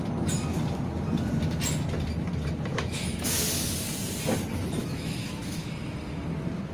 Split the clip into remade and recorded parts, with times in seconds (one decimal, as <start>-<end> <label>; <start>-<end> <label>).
0.0-2.7 recorded; 2.7-3.4 remade; 3.4-4.8 recorded; 4.8-5.7 remade; 5.7-6.7 recorded